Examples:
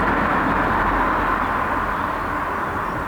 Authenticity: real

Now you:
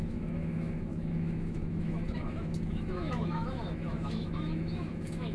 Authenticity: fake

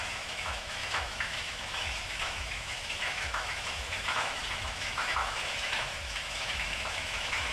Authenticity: fake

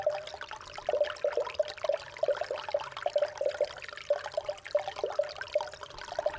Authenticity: real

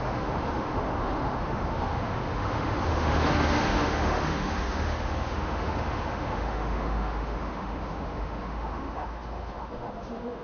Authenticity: fake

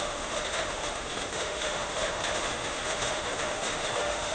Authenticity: fake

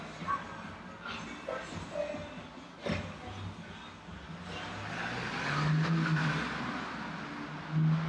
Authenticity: real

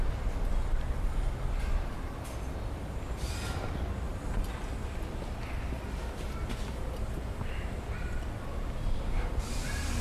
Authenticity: real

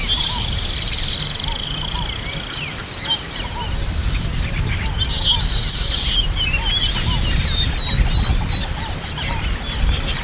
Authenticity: real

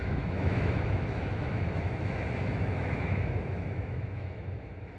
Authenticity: fake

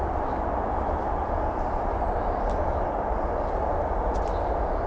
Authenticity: real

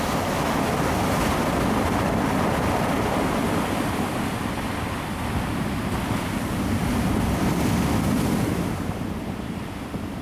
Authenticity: real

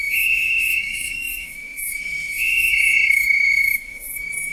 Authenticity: fake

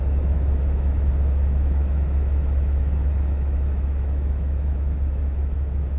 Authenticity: fake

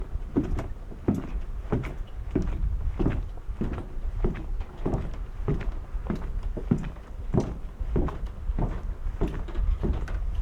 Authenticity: real